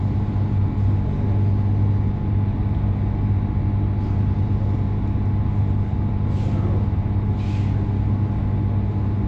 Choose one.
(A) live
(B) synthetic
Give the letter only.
A